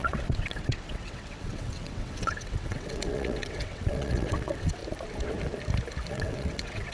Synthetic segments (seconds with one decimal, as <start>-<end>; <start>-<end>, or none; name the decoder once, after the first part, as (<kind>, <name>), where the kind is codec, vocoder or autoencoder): 0.0-4.8 (vocoder, WaveNeXt); 6.1-6.9

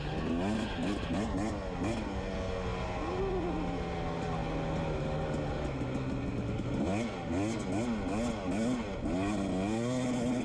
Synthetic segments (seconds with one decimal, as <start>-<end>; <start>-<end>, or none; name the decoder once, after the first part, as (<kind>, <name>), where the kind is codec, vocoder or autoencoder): none

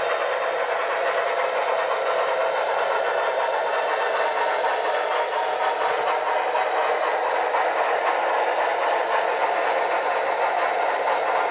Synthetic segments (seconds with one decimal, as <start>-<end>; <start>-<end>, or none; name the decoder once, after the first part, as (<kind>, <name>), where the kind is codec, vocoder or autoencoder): none

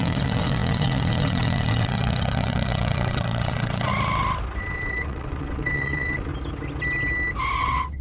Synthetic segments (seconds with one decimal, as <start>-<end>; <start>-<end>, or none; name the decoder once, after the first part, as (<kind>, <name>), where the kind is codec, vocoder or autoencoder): 0.0-3.9 (vocoder, WaveNeXt); 4.6-6.3; 7.6-8.0